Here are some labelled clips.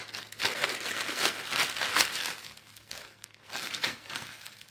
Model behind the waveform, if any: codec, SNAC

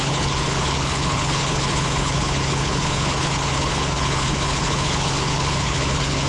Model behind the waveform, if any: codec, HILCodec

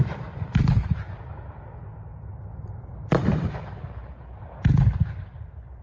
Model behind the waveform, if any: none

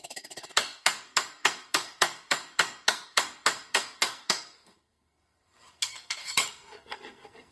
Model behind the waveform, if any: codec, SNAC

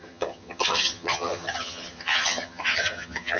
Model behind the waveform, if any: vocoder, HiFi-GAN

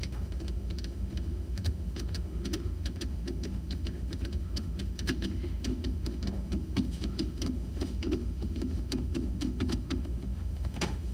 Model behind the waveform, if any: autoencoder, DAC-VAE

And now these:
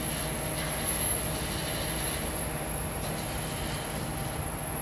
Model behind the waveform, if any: none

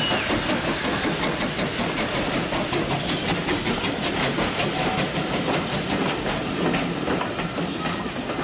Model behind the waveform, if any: none